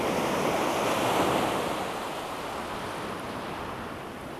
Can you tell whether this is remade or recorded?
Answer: recorded